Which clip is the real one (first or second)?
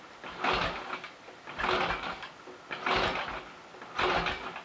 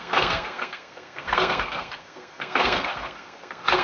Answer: first